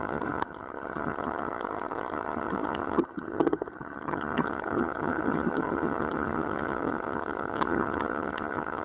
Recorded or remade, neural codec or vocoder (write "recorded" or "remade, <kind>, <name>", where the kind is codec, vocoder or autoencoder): remade, vocoder, HiFi-GAN